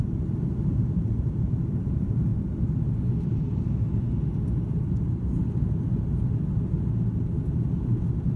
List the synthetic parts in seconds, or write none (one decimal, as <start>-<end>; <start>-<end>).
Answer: 0.0-2.3; 4.7-5.4; 7.5-8.4